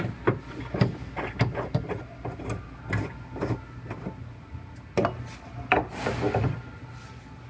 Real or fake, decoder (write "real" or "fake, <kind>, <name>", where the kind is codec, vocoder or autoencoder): real